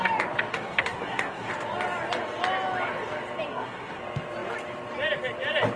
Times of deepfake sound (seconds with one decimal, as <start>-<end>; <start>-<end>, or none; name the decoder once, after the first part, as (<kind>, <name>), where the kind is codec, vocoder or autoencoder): 0.5-1.5 (codec, SNAC); 3.5-4.0